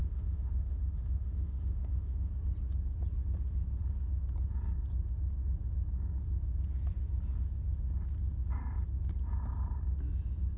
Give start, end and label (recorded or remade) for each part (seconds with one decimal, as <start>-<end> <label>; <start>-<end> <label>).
0.0-2.3 remade; 2.3-10.6 recorded